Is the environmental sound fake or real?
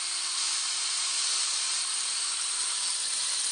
fake